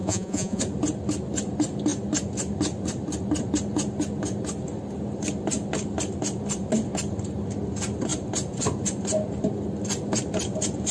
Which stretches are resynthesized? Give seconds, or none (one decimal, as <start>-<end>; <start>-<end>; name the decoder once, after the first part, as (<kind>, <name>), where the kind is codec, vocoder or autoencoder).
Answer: 0.0-0.6 (vocoder, Vocos)